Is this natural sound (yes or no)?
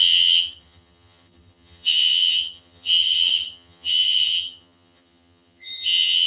no